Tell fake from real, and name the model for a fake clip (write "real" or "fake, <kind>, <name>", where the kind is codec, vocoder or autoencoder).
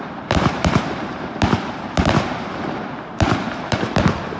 fake, vocoder, BigVGAN v2